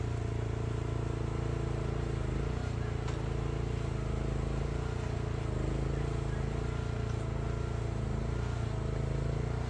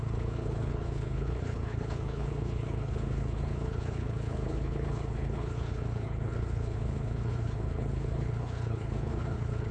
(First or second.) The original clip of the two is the first